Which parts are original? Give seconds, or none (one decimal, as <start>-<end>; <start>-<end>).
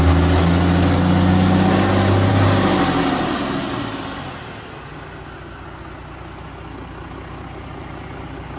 0.0-8.6